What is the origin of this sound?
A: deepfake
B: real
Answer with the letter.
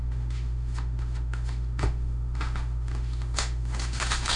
A